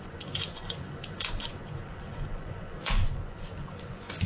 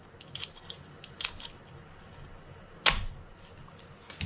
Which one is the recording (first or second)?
second